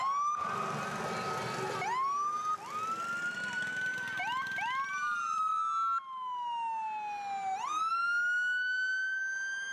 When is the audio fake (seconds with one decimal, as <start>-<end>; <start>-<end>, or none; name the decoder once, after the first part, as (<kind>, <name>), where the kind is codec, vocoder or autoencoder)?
none